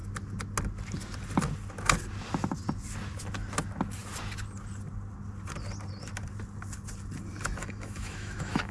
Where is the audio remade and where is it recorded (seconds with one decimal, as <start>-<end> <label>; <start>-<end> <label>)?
0.0-7.6 recorded; 7.6-8.7 remade